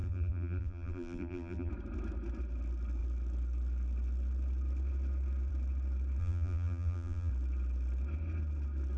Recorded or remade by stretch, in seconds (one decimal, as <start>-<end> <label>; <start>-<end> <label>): 0.0-1.7 remade; 1.7-6.2 recorded; 6.2-7.3 remade; 7.3-9.0 recorded